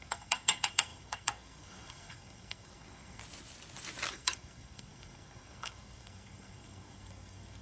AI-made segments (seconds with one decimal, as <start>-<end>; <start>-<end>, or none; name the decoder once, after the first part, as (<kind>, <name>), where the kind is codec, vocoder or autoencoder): 0.0-3.2 (codec, SNAC); 4.1-7.6